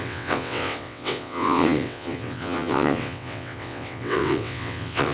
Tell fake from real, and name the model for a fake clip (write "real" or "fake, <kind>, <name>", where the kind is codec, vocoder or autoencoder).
fake, vocoder, WaveNeXt